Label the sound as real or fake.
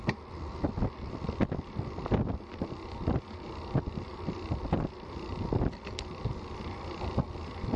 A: real